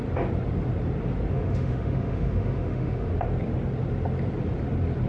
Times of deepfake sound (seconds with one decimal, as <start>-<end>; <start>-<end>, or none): 1.3-3.1